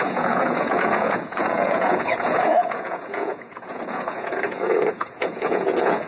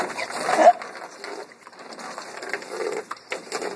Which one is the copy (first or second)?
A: first